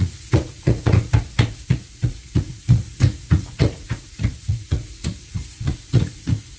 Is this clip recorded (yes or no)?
no